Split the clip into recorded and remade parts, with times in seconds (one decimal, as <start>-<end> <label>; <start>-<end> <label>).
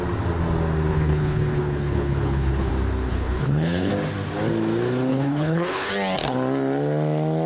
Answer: 0.0-0.9 recorded; 0.9-2.7 remade; 2.7-3.1 recorded; 3.1-3.9 remade; 3.9-5.1 recorded; 5.1-5.9 remade; 5.9-7.5 recorded